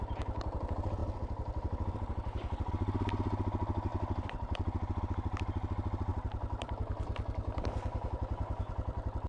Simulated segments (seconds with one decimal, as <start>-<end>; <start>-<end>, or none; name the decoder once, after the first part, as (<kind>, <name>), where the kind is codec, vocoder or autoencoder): 1.0-2.7 (vocoder, BigVGAN v2); 3.9-5.0; 6.1-9.3